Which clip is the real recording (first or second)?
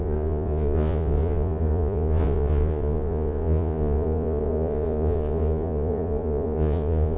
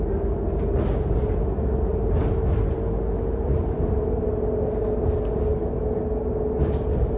second